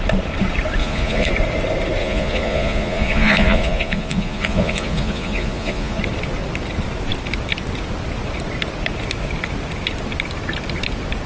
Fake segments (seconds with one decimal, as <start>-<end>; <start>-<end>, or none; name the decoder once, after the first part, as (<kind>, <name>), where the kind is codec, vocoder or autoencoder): 0.8-1.3 (vocoder, Vocos); 2.0-6.0